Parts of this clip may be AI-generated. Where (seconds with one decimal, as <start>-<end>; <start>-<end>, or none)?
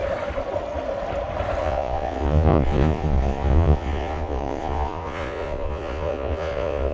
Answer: 1.6-6.9